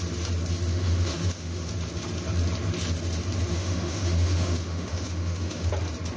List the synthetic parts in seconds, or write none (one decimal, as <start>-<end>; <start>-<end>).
0.7-1.7; 3.5-5.7